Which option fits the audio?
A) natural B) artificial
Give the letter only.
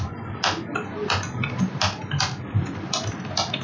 A